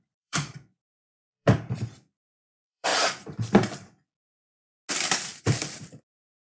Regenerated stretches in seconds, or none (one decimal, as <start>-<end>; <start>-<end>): 0.0-2.9; 5.4-6.4